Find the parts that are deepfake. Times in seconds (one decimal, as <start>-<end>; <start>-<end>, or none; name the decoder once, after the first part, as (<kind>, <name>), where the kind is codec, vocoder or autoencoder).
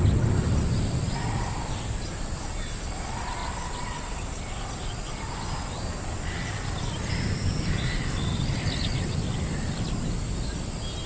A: none